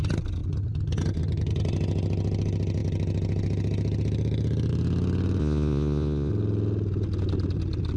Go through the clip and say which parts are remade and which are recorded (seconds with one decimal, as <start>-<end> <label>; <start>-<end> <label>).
0.0-5.4 recorded; 5.4-6.3 remade; 6.3-8.0 recorded